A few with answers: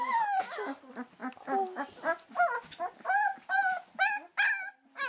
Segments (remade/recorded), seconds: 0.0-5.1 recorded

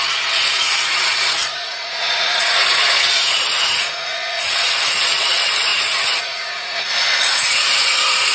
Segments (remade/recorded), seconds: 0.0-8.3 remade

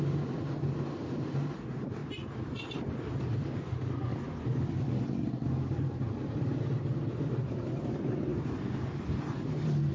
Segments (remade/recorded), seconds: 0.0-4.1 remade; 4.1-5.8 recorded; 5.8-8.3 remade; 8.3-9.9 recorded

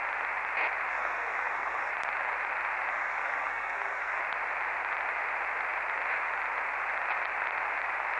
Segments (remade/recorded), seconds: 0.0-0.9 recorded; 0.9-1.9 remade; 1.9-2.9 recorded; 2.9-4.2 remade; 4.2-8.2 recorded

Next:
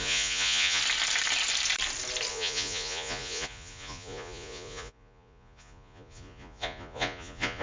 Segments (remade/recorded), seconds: 0.0-0.8 remade; 0.8-2.3 recorded; 2.3-7.6 remade

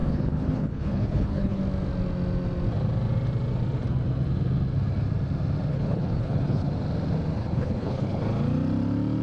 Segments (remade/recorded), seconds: 0.0-1.6 remade; 1.6-5.7 recorded; 5.7-6.7 remade; 6.7-7.4 recorded; 7.4-8.2 remade; 8.2-9.2 recorded